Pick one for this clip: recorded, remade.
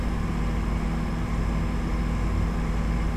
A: recorded